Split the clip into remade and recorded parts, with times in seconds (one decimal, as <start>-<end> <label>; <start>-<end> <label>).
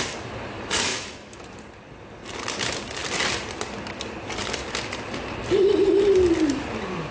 0.0-0.9 recorded; 0.9-1.4 remade; 1.4-7.1 recorded